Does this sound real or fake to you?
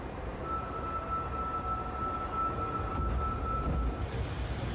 real